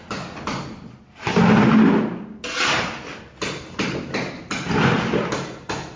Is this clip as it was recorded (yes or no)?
yes